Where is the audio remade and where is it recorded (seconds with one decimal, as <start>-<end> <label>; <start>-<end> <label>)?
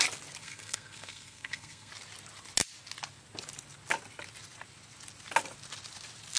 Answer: 0.0-0.4 recorded; 0.4-1.9 remade; 1.9-6.4 recorded